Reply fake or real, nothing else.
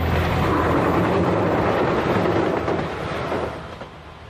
real